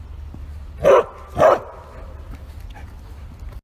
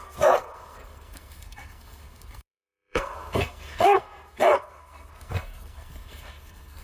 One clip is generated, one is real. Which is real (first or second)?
first